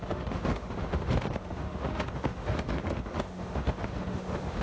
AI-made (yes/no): yes